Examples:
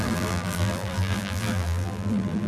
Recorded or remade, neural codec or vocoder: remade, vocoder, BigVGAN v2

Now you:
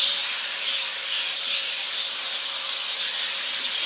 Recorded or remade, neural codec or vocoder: remade, vocoder, BigVGAN v2